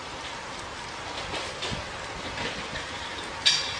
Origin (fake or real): real